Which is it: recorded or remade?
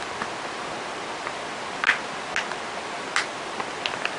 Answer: recorded